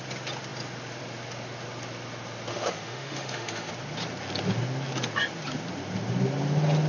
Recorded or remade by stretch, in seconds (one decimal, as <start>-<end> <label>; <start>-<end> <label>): 0.0-2.5 recorded; 2.5-3.7 remade; 3.7-6.9 recorded